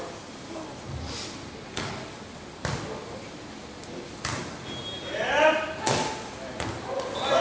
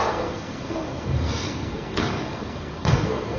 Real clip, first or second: first